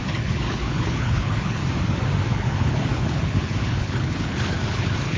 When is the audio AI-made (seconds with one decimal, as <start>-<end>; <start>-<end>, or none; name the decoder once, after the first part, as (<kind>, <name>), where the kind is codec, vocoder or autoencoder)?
0.0-1.6 (codec, HILCodec); 2.3-5.2